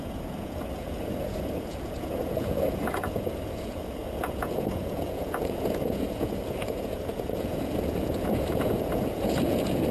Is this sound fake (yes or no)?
yes